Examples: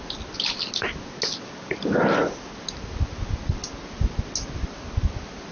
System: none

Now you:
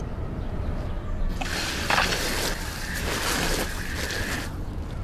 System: none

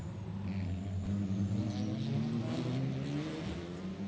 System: none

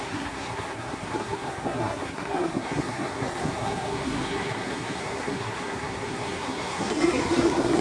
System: codec, SNAC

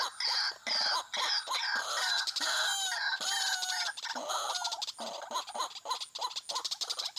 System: none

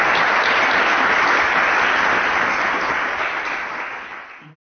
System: none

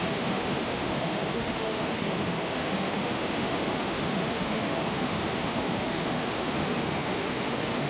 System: autoencoder, DAC-VAE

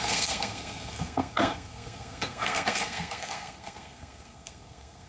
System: codec, SNAC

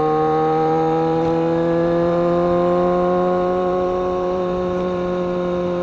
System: vocoder, BigVGAN v2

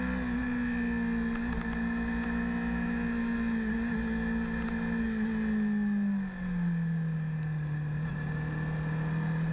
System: none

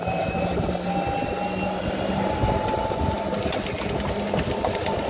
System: none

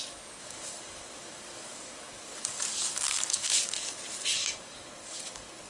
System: codec, DAC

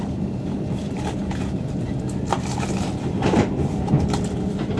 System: vocoder, BigVGAN v2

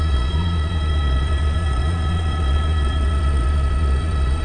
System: vocoder, Vocos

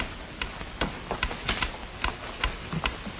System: none